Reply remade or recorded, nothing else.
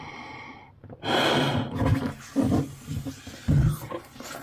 recorded